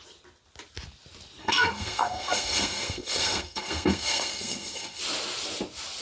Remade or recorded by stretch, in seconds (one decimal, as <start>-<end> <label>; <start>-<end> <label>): 0.0-1.4 recorded; 1.4-5.0 remade; 5.0-6.0 recorded